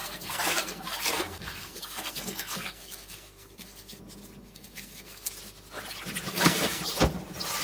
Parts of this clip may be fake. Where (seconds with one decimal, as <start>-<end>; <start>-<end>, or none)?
0.0-4.0; 4.4-5.3; 6.3-6.8